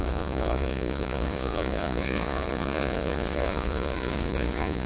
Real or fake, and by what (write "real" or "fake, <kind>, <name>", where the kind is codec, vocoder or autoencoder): fake, vocoder, Vocos